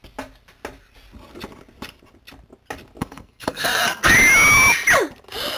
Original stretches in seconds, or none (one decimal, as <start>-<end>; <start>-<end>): 0.0-3.0; 4.1-5.6